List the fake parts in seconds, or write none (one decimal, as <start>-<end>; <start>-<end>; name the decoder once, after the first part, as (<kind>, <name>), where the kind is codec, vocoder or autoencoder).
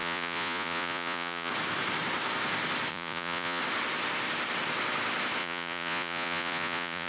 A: 0.0-1.5 (vocoder, Vocos); 2.9-3.6; 5.4-7.1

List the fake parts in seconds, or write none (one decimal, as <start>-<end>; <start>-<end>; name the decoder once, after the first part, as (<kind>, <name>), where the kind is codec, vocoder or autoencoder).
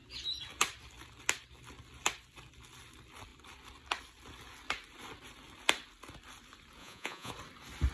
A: 6.8-7.3 (vocoder, Vocos)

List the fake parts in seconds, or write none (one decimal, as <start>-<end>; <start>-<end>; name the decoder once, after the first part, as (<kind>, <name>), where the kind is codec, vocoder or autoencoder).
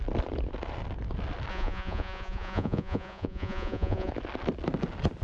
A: 1.5-4.1 (vocoder, Vocos)